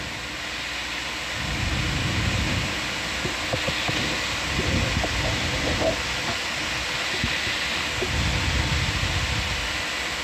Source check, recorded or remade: recorded